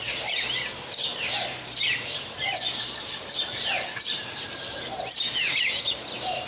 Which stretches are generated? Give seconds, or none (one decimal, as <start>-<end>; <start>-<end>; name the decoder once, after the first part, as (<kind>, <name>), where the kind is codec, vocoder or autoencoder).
0.0-6.5 (vocoder, BigVGAN v2)